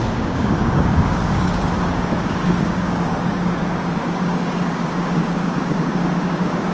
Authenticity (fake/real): fake